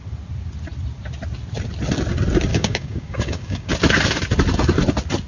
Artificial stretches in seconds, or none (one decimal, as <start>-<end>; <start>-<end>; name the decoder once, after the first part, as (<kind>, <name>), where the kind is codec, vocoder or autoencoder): 2.5-3.7 (codec, DAC)